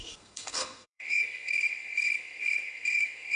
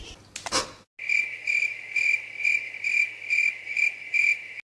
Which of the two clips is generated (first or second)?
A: first